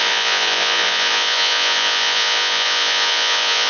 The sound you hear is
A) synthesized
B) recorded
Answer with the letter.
A